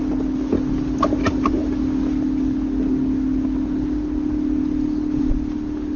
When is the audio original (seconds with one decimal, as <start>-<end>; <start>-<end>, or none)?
0.0-6.0